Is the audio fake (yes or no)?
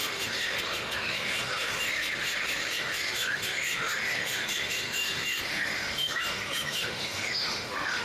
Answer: yes